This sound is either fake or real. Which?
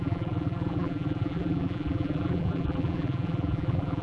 fake